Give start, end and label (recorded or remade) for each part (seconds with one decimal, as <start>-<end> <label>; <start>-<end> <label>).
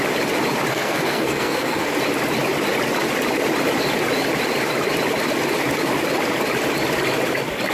0.0-0.7 recorded; 0.7-1.9 remade; 1.9-7.7 recorded